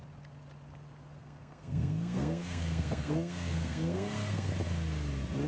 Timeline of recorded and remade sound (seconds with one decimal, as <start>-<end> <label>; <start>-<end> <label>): 0.0-1.2 recorded; 1.2-4.5 remade; 4.5-5.5 recorded